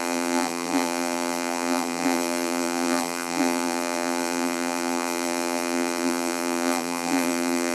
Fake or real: fake